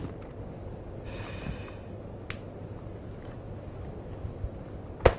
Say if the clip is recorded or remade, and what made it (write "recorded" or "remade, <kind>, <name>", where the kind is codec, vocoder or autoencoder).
recorded